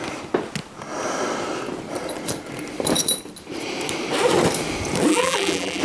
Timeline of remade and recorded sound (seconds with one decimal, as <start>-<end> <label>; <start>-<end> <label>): 0.0-5.1 recorded; 5.1-5.8 remade